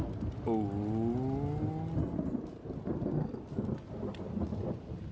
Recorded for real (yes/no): yes